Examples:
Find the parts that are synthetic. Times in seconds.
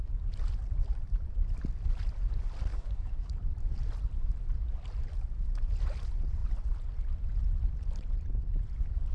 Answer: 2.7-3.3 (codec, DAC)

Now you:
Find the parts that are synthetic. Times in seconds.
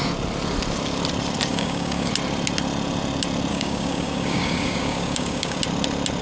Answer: 1.5-2.1 (codec, DAC); 3.5-5.6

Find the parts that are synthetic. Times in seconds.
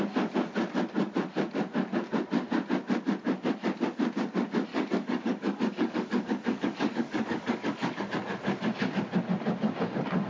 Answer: 4.7-8.1 (codec, DAC)